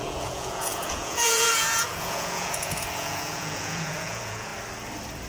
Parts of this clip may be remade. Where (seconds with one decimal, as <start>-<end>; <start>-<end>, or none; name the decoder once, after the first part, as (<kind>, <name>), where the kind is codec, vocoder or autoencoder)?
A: 0.0-4.5 (vocoder, Vocos)